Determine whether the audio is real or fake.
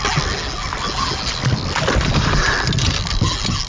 real